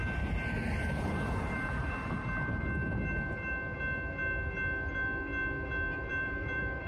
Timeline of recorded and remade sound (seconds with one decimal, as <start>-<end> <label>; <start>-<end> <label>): 0.0-6.1 recorded; 6.1-6.9 remade